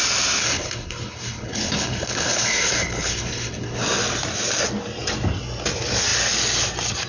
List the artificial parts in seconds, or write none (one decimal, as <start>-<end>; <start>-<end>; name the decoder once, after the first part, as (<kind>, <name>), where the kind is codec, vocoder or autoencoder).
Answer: 0.4-3.8 (codec, HILCodec)